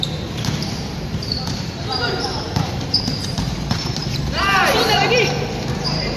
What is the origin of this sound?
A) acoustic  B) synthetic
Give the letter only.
B